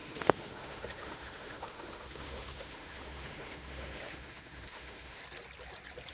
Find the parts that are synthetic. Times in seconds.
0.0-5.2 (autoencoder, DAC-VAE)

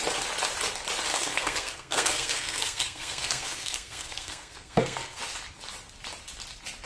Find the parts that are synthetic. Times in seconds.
1.1-5.2 (codec, SNAC)

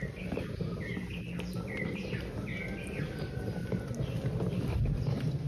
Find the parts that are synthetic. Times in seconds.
3.6-4.3 (vocoder, BigVGAN v2)

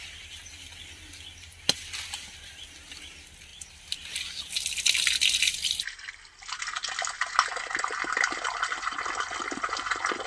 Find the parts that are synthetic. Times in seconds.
none

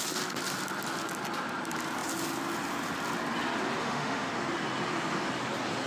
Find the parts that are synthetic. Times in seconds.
3.8-4.3 (autoencoder, DAC-VAE)

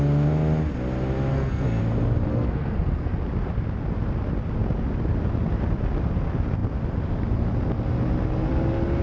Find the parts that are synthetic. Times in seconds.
1.3-1.8 (codec, SNAC); 2.3-3.2

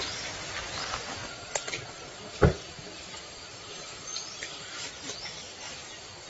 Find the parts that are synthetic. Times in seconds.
none